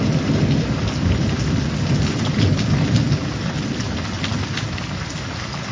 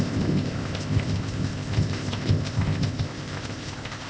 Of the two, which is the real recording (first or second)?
first